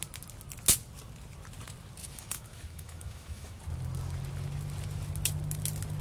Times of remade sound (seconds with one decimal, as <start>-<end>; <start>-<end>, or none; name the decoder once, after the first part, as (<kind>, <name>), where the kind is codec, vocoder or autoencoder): 2.0-3.6 (autoencoder, DAC-VAE)